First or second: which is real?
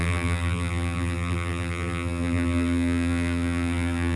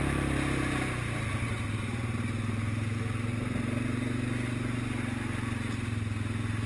second